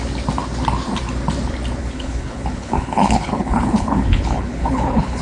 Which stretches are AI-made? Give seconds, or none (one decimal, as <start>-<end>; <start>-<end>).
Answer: 1.8-5.2